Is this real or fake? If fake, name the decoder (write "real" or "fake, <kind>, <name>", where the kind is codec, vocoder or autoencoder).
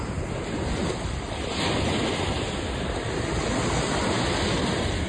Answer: real